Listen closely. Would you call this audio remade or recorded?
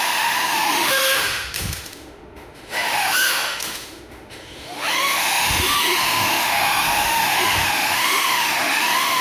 remade